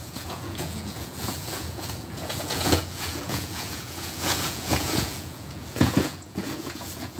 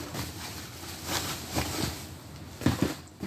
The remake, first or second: first